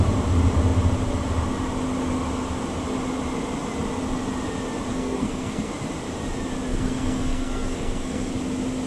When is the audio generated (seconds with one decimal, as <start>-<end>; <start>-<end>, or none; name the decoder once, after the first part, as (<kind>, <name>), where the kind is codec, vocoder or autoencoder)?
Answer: 4.9-5.7 (codec, SNAC); 6.7-8.3